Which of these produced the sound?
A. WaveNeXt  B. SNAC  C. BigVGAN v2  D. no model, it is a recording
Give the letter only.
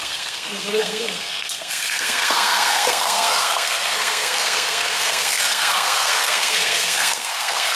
B